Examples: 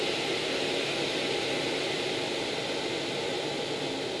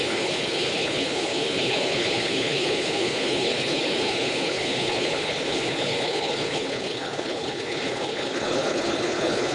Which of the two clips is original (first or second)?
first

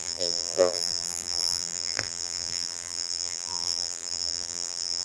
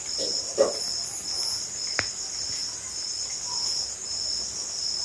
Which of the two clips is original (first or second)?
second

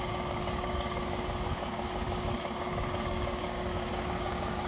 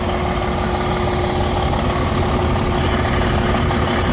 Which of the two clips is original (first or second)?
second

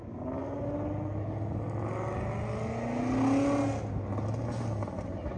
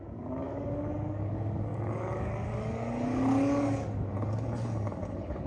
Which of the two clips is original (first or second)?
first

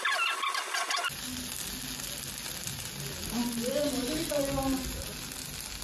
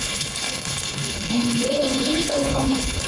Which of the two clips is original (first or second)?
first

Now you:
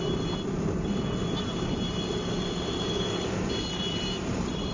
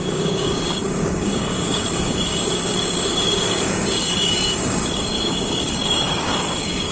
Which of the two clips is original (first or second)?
first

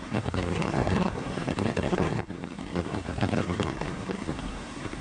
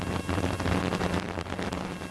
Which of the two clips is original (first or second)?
second